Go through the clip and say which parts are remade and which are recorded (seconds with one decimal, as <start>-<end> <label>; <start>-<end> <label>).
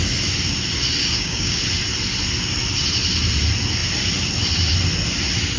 0.0-1.0 recorded; 1.0-1.6 remade; 1.6-5.6 recorded